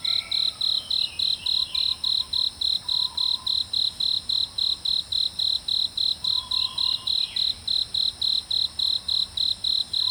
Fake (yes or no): no